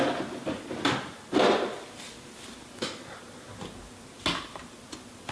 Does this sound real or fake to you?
real